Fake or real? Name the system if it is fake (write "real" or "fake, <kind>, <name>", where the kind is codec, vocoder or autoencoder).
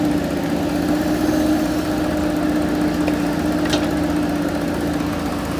real